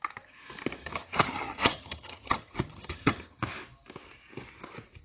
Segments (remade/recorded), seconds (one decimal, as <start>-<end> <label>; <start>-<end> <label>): 0.0-0.8 recorded; 0.8-3.4 remade; 3.4-5.0 recorded